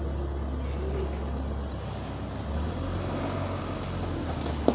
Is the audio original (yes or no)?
yes